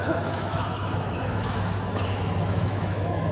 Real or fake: fake